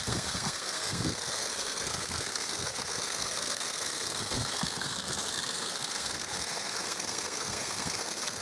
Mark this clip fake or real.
fake